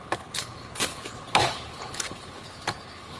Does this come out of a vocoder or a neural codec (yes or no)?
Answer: yes